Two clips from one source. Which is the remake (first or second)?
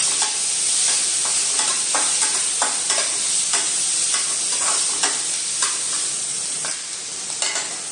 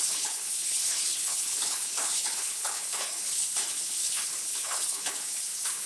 second